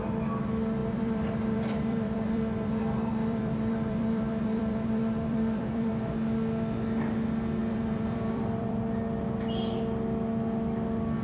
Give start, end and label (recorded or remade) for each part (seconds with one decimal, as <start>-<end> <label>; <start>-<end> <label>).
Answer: 0.0-0.8 recorded; 0.8-5.9 remade; 5.9-7.6 recorded; 7.6-8.8 remade; 8.8-11.2 recorded